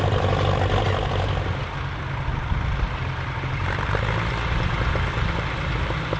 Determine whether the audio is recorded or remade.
recorded